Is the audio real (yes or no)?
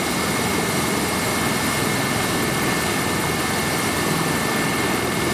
yes